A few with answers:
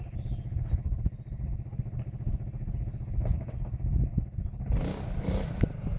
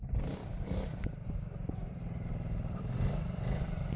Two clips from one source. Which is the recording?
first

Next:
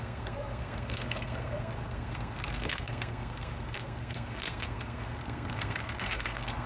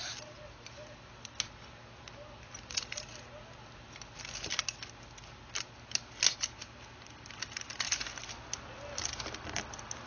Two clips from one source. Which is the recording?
second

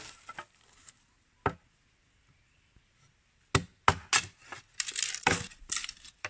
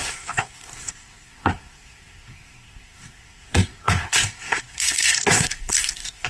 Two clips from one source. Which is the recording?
first